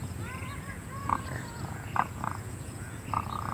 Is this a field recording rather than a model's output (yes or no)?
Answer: no